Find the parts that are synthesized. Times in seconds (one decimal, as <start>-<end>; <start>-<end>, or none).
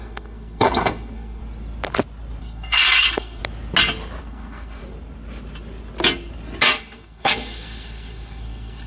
0.0-1.4; 2.4-3.4; 4.2-4.8; 6.7-8.9